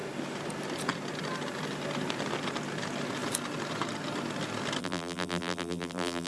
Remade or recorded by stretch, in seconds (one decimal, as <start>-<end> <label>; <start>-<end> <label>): 0.0-4.8 recorded; 4.8-6.3 remade